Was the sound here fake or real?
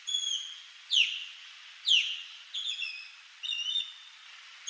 fake